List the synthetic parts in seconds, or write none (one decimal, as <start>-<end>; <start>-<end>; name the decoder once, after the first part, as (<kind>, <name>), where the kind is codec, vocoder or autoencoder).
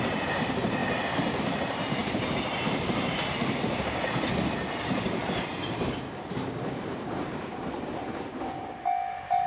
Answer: 2.0-4.0 (vocoder, BigVGAN v2); 5.2-7.8